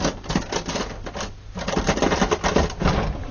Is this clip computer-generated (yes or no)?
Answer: no